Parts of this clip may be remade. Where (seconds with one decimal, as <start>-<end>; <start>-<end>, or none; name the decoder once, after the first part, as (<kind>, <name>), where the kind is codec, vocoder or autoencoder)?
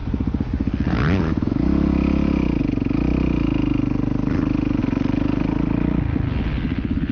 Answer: none